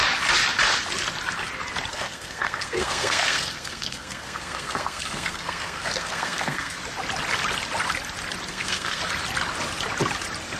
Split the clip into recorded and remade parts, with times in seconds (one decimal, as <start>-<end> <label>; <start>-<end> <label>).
0.0-1.9 recorded; 1.9-6.8 remade; 6.8-8.5 recorded; 8.5-9.0 remade; 9.0-10.6 recorded